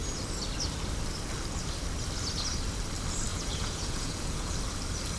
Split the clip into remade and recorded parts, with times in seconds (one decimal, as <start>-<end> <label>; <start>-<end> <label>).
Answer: 0.0-3.3 recorded; 3.3-4.5 remade; 4.5-5.2 recorded